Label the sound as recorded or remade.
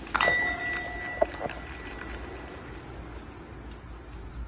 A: recorded